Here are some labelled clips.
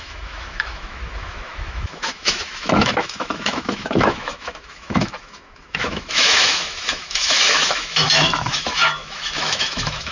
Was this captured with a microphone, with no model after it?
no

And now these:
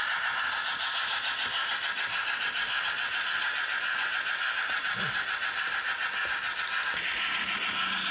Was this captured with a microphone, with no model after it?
yes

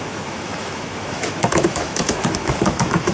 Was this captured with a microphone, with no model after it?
no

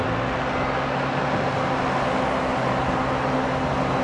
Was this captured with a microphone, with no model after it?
yes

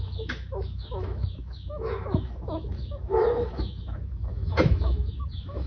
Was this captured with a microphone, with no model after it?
no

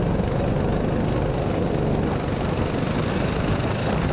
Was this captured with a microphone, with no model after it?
yes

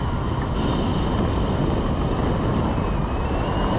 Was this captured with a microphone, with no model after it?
yes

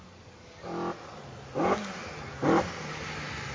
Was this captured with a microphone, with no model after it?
yes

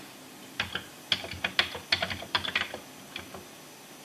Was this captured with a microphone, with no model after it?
yes